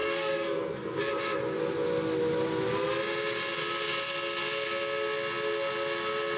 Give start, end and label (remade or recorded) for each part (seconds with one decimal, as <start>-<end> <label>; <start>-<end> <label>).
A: 0.0-1.1 remade; 1.1-6.4 recorded